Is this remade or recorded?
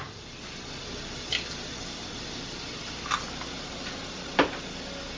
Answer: recorded